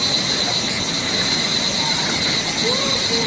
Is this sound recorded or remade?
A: recorded